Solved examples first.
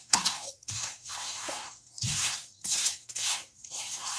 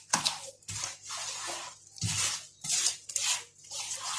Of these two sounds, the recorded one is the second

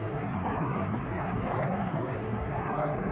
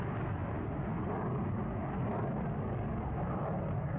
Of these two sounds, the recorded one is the second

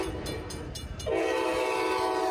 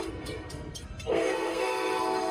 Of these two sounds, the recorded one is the first